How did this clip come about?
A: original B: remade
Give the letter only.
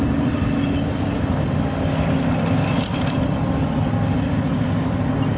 A